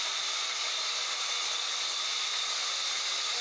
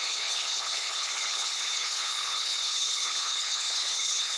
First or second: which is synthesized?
second